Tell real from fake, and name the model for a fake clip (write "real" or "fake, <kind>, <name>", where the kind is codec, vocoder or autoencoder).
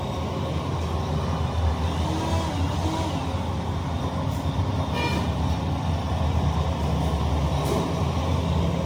real